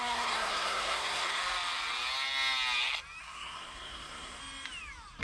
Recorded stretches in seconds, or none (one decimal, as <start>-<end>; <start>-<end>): 1.4-3.2; 4.4-5.2